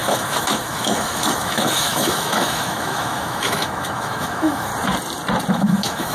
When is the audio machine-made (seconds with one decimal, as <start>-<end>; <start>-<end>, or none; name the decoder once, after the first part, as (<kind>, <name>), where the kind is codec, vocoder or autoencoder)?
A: 0.0-4.7 (autoencoder, DAC-VAE); 5.5-6.1